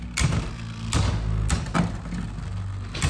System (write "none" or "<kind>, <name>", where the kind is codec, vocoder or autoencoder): none